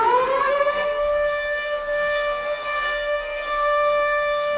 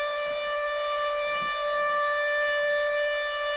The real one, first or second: second